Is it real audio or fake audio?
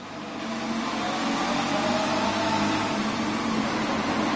real